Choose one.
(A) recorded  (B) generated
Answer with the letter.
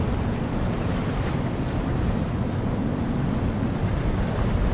A